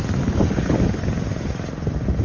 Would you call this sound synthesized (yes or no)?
no